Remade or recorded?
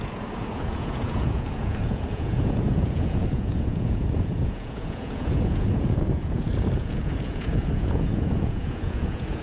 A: remade